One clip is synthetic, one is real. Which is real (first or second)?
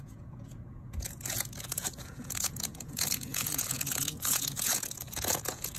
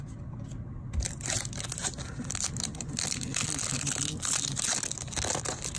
second